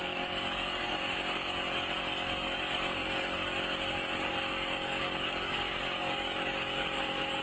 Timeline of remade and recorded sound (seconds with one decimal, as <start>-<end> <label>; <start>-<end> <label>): 0.0-7.4 remade

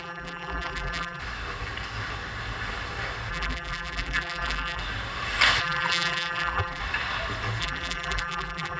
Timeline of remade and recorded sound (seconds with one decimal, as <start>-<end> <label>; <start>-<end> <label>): 0.0-1.2 remade; 1.2-3.3 recorded; 3.3-4.8 remade; 4.8-5.6 recorded; 5.6-6.8 remade; 6.8-7.6 recorded; 7.6-8.8 remade

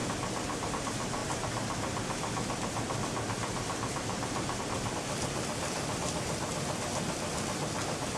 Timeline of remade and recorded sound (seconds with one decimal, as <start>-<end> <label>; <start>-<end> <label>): 0.0-8.2 recorded

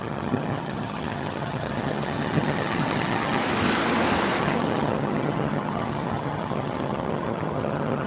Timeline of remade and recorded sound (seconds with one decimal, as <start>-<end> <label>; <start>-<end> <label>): 0.0-3.4 remade; 3.4-4.4 recorded; 4.4-8.1 remade

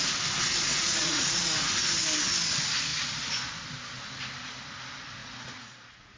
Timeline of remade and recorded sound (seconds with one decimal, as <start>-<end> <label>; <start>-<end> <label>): 0.0-0.7 recorded; 0.7-1.7 remade; 1.7-5.2 recorded; 5.2-6.2 remade